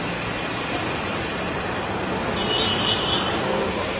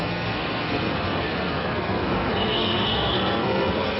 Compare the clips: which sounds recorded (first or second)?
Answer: first